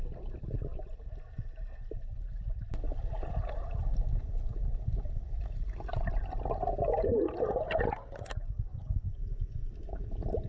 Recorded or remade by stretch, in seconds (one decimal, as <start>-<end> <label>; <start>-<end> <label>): 0.0-8.7 recorded; 8.7-9.7 remade; 9.7-10.5 recorded